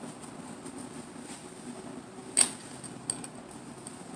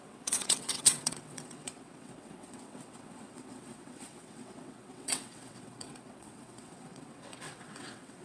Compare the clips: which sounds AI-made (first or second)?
second